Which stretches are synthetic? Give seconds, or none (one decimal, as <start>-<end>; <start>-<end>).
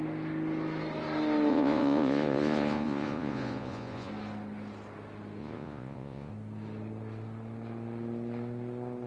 1.5-4.1; 5.4-6.3